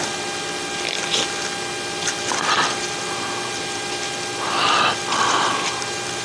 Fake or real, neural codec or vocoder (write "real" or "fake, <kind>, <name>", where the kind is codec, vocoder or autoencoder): fake, vocoder, BigVGAN v2